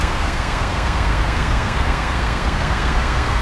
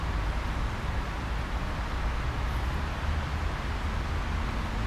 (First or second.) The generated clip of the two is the first